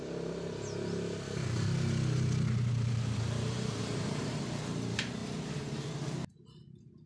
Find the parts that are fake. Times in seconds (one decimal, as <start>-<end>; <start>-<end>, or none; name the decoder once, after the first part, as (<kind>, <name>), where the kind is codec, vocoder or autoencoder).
3.8-4.4 (vocoder, BigVGAN v2); 5.2-5.9